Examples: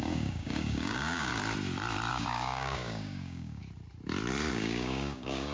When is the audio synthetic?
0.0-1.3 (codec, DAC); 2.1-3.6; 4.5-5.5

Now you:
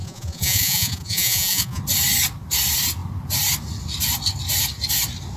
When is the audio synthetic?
0.0-1.8 (vocoder, Vocos)

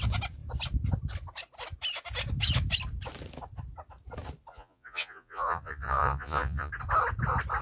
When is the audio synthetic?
4.5-6.7 (vocoder, Vocos)

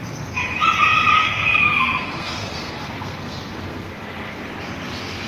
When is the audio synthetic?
1.2-4.4 (codec, SNAC)

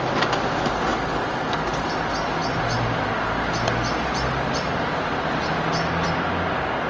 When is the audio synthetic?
none

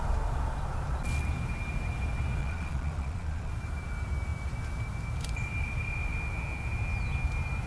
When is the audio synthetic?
2.4-3.5 (vocoder, Vocos)